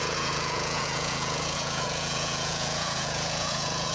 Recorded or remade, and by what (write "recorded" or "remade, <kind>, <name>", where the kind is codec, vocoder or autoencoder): remade, vocoder, Vocos